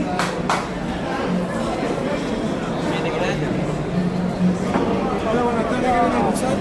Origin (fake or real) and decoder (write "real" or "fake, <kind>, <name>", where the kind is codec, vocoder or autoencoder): real